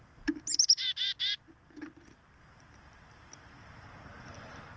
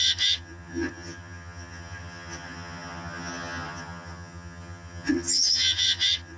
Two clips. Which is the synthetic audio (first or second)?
second